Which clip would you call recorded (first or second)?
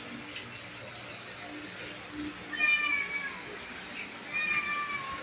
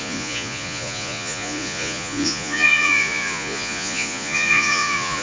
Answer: first